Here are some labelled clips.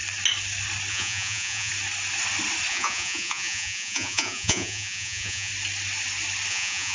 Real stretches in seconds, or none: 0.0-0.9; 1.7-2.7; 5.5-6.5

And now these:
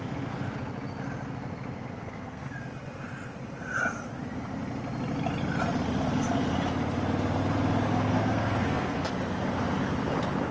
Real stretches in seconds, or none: 0.0-2.0; 2.5-8.1; 9.1-10.5

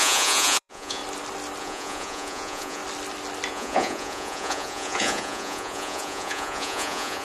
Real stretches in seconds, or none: 1.0-1.6; 2.8-3.5